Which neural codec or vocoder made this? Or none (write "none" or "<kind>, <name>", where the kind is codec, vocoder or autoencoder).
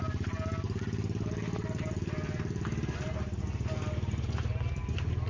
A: none